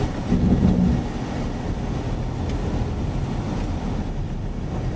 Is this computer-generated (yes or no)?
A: no